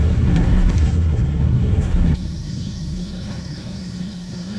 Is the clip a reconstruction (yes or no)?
yes